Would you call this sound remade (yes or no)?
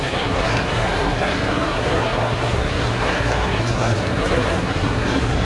yes